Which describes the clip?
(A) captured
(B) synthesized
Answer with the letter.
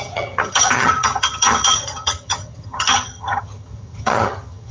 B